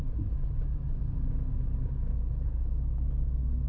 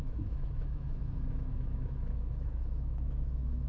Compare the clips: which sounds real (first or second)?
first